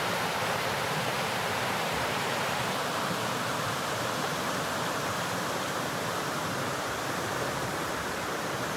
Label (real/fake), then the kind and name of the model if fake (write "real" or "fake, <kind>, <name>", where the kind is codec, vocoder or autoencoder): fake, vocoder, BigVGAN v2